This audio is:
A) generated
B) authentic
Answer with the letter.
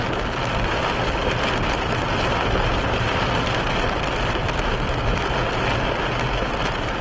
B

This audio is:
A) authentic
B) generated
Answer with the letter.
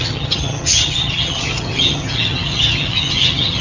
B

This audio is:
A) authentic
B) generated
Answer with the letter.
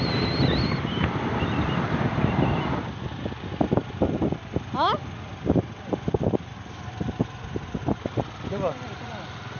A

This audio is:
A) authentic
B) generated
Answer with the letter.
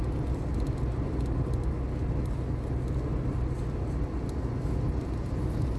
A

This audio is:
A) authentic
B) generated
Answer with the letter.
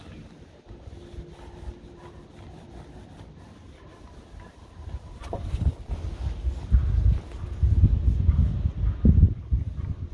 A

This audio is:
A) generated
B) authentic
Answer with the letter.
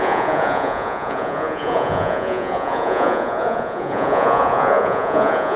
A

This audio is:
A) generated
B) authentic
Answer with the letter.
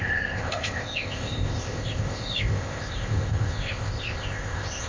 A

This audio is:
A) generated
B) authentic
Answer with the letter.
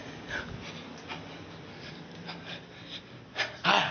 B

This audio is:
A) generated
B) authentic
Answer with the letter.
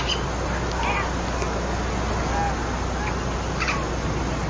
B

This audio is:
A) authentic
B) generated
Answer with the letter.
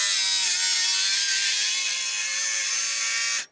A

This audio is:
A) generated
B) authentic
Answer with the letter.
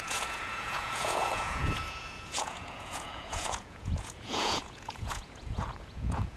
A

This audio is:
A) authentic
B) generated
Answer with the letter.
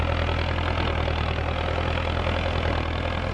A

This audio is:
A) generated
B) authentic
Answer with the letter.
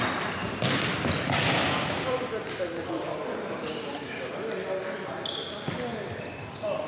B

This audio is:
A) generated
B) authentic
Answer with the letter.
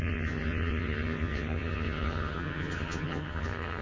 A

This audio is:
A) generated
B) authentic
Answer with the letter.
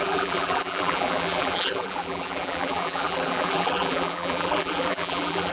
A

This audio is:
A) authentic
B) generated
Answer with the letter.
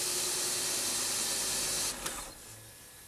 A